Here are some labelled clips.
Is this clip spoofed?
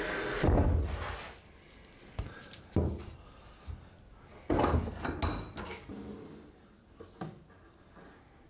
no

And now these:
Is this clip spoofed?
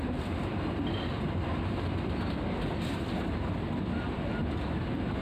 yes